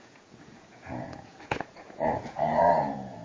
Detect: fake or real fake